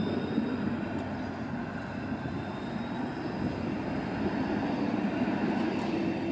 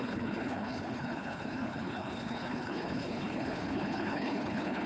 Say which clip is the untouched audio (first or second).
first